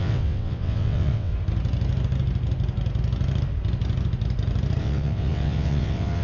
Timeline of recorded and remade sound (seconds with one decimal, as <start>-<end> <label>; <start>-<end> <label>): 0.0-1.3 remade; 1.3-4.8 recorded; 4.8-6.2 remade